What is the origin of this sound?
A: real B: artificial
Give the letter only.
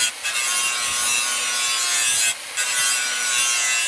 A